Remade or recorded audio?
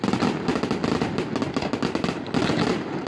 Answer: recorded